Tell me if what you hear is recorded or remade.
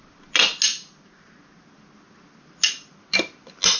recorded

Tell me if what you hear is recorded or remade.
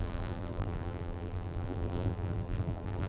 remade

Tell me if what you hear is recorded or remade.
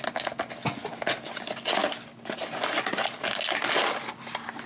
recorded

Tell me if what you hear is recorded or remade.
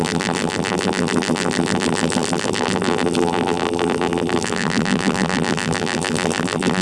remade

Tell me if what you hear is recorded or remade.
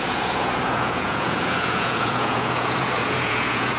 remade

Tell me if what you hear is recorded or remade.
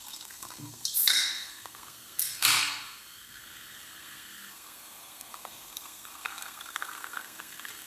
remade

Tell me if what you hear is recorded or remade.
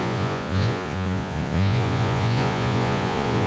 remade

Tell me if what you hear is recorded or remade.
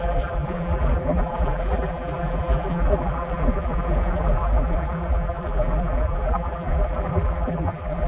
remade